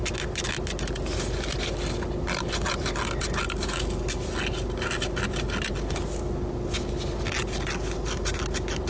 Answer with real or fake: real